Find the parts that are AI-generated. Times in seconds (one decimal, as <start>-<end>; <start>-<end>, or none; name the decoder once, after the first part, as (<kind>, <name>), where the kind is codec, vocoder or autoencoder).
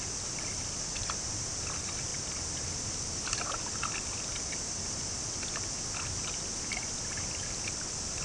none